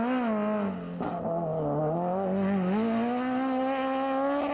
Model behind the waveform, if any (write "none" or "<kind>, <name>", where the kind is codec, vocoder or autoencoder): none